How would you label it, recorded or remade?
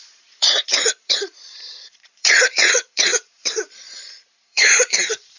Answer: remade